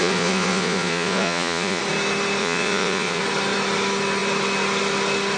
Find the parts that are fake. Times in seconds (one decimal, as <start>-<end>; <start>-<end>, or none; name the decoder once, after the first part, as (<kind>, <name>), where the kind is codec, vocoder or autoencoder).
0.0-1.8 (vocoder, Vocos); 2.4-3.2